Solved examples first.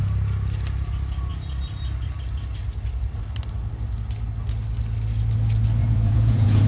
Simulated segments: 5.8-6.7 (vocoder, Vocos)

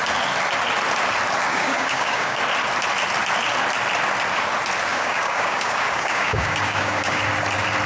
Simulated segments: 1.5-2.4 (codec, DAC); 4.9-7.2

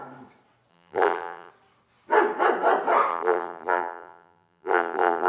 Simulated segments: 0.7-1.5 (vocoder, BigVGAN v2); 3.1-5.3

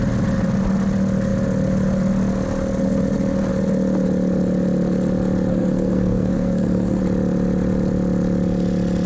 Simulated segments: 5.5-7.0 (codec, SNAC)

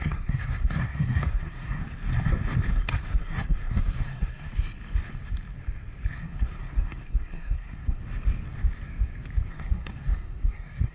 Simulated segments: 0.0-1.8 (codec, SNAC); 2.7-4.5; 6.2-8.0; 9.5-10.9

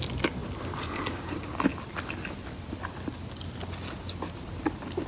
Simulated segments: 0.4-1.0 (vocoder, BigVGAN v2)

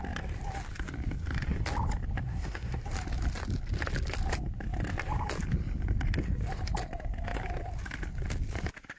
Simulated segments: 2.2-2.8 (codec, SNAC)

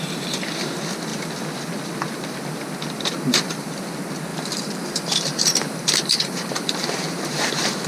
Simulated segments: 4.3-7.5 (vocoder, BigVGAN v2)